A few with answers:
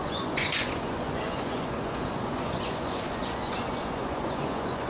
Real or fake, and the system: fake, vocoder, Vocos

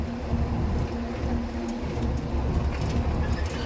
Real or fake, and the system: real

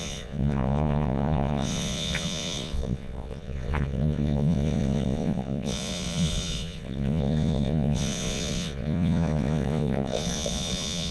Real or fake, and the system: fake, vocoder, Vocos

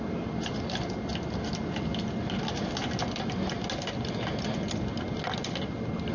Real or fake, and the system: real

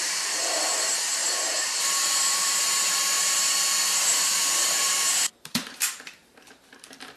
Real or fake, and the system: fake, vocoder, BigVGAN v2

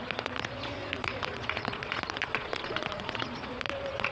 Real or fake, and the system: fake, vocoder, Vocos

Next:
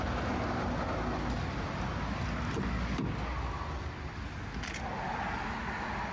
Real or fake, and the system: real